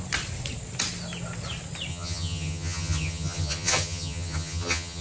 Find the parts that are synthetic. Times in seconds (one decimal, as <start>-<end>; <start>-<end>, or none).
1.9-5.0